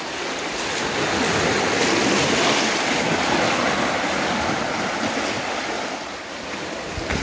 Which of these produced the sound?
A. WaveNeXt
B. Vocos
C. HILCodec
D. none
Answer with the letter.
D